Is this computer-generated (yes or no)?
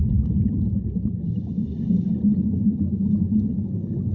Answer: no